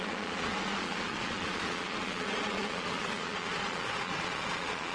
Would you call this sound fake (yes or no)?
yes